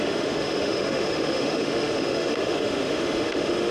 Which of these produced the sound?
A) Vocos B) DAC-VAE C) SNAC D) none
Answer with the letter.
B